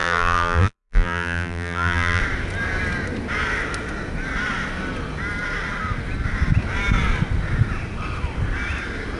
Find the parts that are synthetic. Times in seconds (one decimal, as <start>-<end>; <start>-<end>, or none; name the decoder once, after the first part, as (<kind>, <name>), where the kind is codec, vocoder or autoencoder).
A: 0.0-2.2 (vocoder, BigVGAN v2)